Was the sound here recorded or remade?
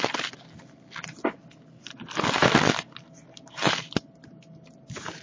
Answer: recorded